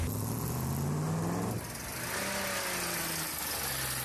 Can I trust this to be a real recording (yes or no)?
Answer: yes